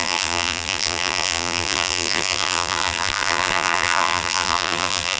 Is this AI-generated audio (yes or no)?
yes